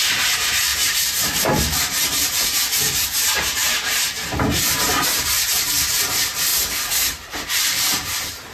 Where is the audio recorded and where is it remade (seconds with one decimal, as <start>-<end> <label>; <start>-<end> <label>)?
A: 0.0-6.5 remade; 6.5-7.5 recorded; 7.5-8.5 remade